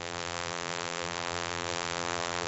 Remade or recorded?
remade